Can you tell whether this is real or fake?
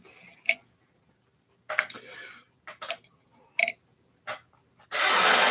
real